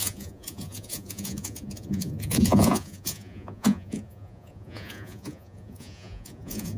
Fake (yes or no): yes